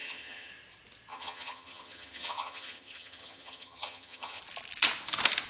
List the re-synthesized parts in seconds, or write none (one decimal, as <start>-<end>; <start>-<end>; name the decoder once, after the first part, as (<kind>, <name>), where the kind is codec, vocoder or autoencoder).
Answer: 0.0-0.5 (vocoder, HiFi-GAN); 1.1-4.4

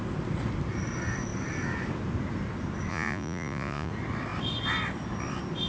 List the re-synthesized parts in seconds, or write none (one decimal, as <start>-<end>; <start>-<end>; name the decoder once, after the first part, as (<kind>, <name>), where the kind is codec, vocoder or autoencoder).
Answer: 2.9-3.9 (vocoder, Vocos)

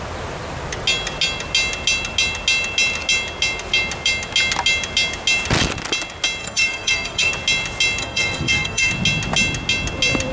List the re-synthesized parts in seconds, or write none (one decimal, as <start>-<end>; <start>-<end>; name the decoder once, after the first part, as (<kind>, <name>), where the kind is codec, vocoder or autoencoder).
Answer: 6.4-7.3 (codec, SNAC); 8.0-8.9

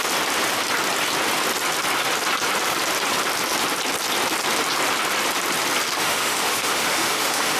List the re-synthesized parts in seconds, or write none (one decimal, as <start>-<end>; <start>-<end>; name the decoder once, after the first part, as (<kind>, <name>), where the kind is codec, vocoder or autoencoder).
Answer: 6.0-7.6 (autoencoder, DAC-VAE)